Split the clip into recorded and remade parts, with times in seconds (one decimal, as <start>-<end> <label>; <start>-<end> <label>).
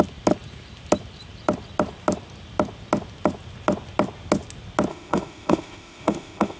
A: 0.0-4.9 recorded; 4.9-6.6 remade